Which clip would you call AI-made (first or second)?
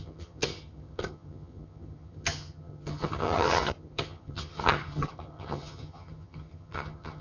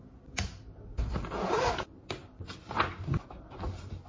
first